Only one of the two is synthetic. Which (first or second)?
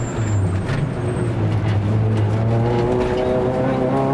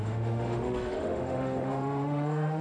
second